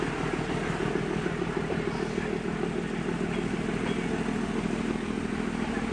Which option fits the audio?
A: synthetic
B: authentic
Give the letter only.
B